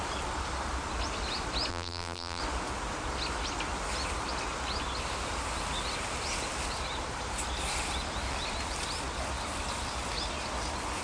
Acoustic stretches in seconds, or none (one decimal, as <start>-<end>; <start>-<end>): 0.0-1.7; 2.4-11.0